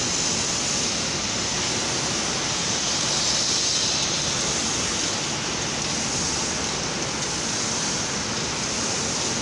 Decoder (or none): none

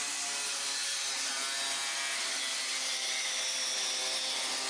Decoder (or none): none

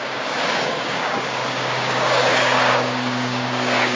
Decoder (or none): codec, DAC